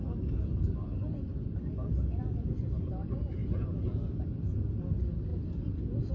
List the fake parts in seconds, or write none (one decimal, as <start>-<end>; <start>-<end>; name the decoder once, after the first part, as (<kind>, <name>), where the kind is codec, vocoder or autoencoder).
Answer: 3.4-3.9 (vocoder, BigVGAN v2); 5.3-6.1